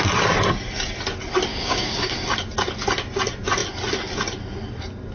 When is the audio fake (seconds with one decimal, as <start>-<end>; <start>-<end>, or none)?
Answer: 1.5-2.2